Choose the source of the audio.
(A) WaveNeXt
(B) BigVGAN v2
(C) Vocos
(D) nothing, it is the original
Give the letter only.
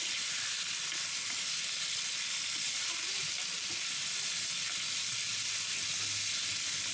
D